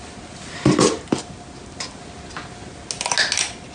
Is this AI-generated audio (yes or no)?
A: no